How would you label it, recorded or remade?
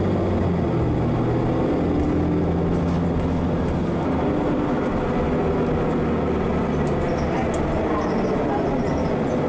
recorded